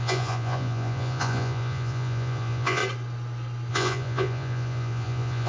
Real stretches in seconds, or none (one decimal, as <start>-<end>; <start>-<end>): 2.8-3.7